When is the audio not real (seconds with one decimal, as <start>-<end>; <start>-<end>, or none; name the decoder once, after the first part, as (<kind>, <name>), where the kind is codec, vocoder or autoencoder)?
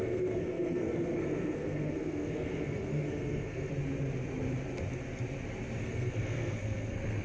0.0-3.7 (codec, SNAC); 5.8-7.2